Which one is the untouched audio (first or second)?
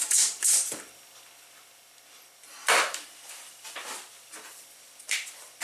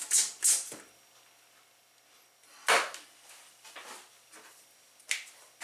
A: second